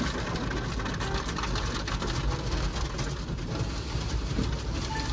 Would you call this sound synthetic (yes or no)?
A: no